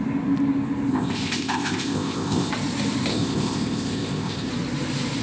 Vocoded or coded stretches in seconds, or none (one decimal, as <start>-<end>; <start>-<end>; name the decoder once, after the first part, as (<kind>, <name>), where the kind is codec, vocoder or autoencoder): 0.9-2.5 (codec, ZipCodec); 3.1-4.5